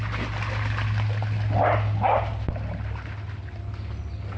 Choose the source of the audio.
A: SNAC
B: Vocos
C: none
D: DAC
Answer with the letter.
C